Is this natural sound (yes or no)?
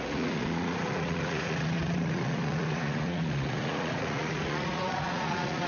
no